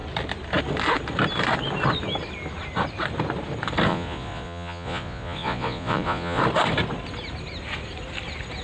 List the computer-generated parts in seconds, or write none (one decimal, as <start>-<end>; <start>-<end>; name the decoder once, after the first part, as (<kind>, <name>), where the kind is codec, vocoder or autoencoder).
3.9-6.4 (vocoder, Vocos)